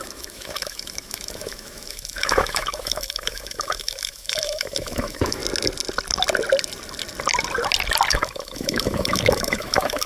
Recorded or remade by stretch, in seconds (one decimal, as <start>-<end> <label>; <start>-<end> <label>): 0.0-5.4 remade; 5.4-8.1 recorded; 8.1-10.1 remade